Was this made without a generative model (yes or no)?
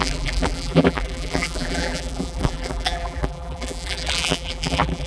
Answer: no